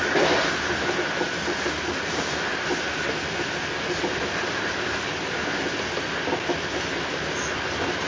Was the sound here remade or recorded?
recorded